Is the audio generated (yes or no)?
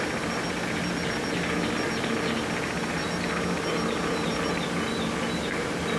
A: no